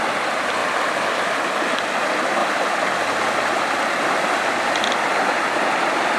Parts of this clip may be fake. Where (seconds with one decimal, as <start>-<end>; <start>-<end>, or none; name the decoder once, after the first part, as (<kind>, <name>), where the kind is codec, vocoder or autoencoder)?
0.6-1.8 (vocoder, BigVGAN v2); 2.4-3.9